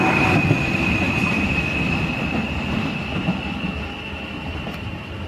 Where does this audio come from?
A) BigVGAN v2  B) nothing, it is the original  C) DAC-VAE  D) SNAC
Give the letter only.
A